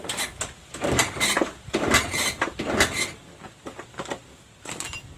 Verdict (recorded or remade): recorded